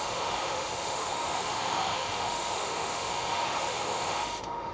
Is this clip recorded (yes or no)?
no